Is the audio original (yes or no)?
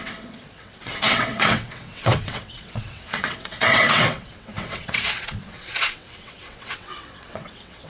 no